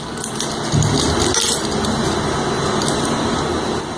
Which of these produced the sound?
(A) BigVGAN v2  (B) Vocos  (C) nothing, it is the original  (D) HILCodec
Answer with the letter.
C